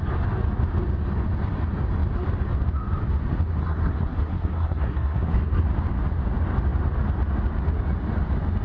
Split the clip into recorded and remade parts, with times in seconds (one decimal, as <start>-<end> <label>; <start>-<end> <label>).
0.0-3.6 recorded; 3.6-5.6 remade; 5.6-8.6 recorded